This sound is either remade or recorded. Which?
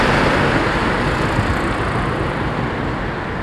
recorded